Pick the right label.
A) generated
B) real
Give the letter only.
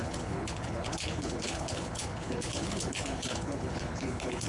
A